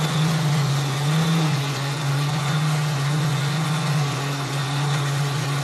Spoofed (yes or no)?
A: yes